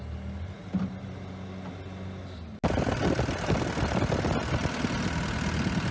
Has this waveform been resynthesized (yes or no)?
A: no